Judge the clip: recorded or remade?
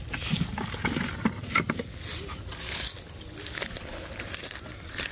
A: recorded